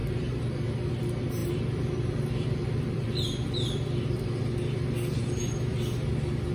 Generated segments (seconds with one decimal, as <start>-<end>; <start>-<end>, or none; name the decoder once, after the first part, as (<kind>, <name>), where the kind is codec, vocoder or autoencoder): 0.0-0.9 (vocoder, BigVGAN v2); 1.4-3.5